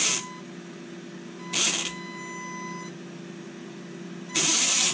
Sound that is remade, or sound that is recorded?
recorded